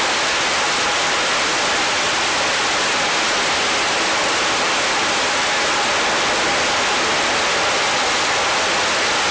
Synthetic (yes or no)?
no